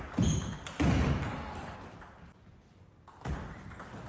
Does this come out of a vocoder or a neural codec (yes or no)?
no